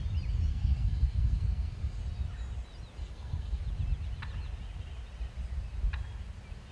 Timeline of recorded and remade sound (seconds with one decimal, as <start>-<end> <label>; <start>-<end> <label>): 0.0-0.5 recorded; 0.5-2.0 remade; 2.0-3.0 recorded; 3.0-3.6 remade; 3.6-6.7 recorded